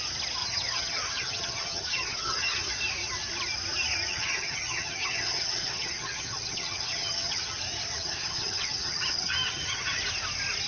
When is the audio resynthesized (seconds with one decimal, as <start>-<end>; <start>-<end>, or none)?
0.4-2.7; 4.1-7.6; 8.0-10.0

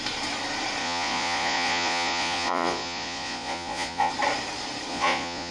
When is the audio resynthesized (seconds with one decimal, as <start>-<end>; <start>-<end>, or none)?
0.8-4.1; 4.9-5.5

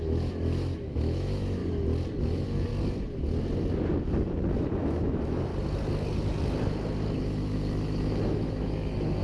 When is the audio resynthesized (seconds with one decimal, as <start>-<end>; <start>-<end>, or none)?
0.0-1.6; 2.2-2.7; 4.5-5.5; 7.2-9.2

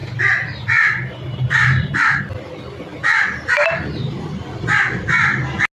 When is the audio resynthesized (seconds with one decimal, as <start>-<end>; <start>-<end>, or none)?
0.0-2.2

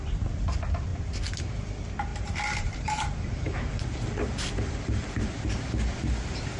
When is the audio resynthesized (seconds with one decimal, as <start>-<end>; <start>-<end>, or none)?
2.1-6.1

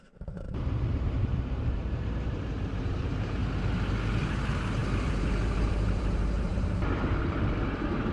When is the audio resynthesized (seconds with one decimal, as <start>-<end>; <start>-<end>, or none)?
0.0-3.4; 4.1-8.1

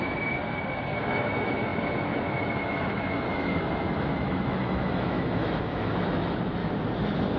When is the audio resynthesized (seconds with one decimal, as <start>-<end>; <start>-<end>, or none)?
0.0-0.4; 1.0-6.6

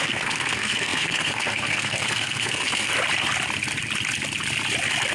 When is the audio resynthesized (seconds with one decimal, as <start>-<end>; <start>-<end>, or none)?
0.0-2.9